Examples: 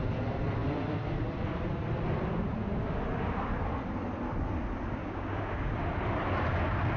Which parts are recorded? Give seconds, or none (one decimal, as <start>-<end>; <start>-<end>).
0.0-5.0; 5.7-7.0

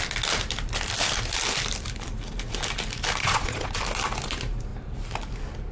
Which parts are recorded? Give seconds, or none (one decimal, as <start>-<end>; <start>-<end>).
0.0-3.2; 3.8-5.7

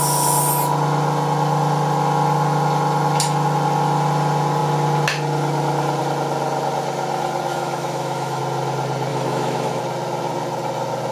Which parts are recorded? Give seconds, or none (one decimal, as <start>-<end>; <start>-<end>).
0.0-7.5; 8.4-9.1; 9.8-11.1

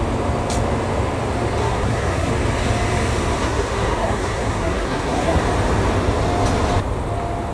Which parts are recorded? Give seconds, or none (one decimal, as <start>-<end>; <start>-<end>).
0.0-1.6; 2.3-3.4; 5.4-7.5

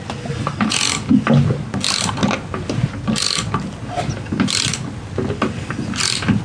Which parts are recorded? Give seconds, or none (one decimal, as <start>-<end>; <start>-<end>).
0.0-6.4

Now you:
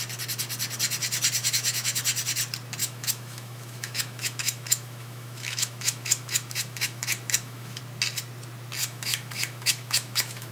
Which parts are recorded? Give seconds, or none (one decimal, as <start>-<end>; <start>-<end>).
0.0-1.4; 2.0-2.8; 7.8-8.8

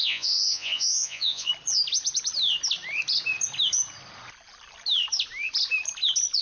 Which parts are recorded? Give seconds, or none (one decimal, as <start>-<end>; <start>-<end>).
1.5-6.4

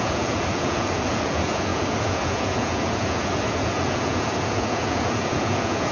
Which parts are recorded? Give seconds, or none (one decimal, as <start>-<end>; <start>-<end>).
none